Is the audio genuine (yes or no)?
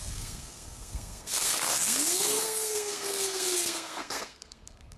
no